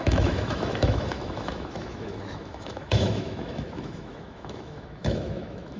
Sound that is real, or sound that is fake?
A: fake